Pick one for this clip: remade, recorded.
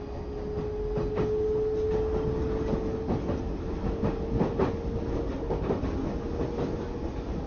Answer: recorded